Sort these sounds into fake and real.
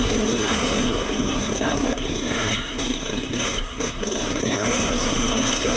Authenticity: fake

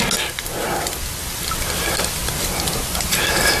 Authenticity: real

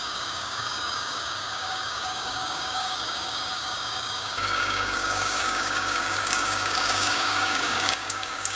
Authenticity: fake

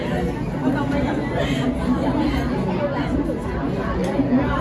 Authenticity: real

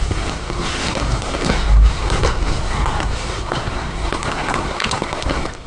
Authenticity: fake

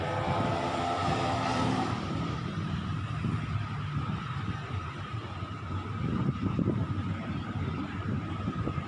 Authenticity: fake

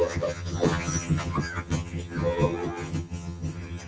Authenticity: fake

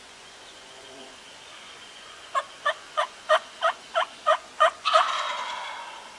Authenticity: fake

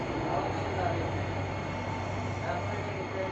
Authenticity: real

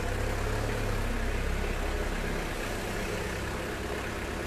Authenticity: real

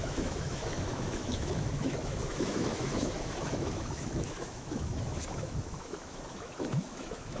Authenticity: fake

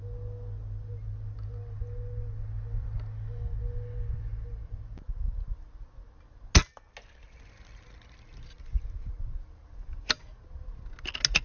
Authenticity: real